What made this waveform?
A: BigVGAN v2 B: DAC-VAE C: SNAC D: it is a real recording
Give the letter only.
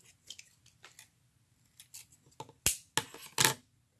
D